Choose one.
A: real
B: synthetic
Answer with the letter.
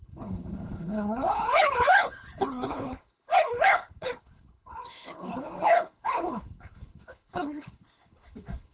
B